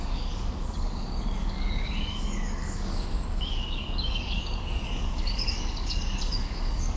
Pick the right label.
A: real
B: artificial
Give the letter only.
B